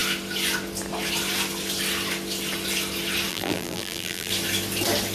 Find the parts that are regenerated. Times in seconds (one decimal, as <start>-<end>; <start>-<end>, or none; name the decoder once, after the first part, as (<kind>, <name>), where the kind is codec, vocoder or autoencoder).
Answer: 3.3-4.3 (vocoder, BigVGAN v2)